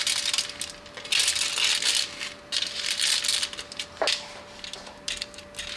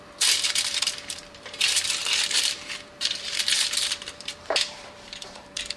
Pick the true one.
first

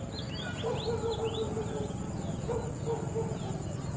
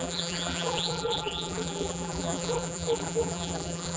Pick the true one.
first